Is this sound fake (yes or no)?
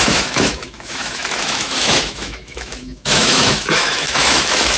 yes